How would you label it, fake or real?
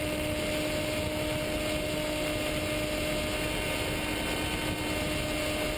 real